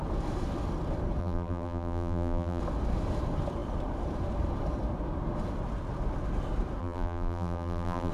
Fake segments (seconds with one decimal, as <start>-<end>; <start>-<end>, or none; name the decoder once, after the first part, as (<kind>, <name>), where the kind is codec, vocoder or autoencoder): 1.2-2.6 (vocoder, BigVGAN v2); 6.8-8.1